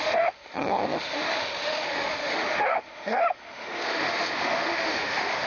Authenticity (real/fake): fake